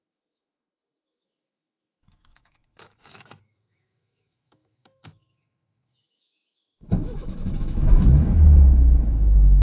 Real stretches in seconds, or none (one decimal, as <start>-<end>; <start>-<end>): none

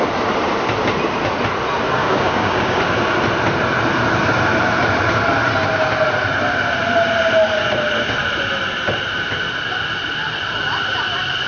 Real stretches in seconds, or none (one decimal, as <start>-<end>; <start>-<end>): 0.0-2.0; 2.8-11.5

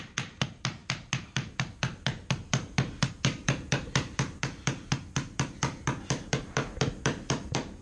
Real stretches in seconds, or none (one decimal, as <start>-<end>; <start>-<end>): 0.0-7.8

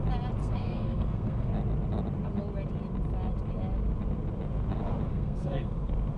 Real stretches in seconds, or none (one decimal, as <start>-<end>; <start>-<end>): 0.0-0.4; 1.5-5.1; 5.7-6.2